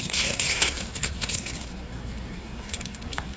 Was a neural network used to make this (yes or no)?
yes